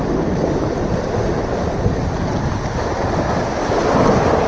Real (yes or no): yes